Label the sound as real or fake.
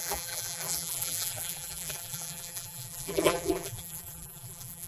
fake